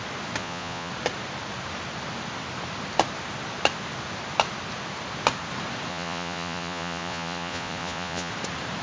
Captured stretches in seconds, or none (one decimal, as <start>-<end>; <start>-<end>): 0.0-0.4; 0.9-5.9; 8.3-8.8